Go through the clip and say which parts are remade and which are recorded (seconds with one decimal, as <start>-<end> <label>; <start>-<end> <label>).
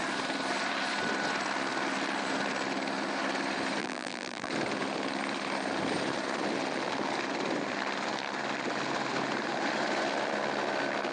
0.0-3.8 recorded; 3.8-4.5 remade; 4.5-11.1 recorded